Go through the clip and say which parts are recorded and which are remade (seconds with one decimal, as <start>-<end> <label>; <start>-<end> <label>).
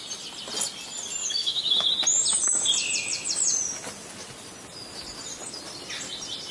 0.0-1.2 recorded; 1.2-1.9 remade; 1.9-6.5 recorded